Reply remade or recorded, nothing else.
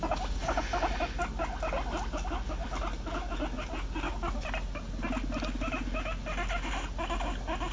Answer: recorded